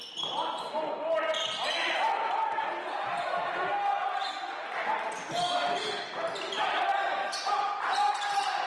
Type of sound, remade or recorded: recorded